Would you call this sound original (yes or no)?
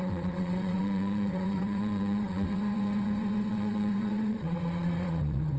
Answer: no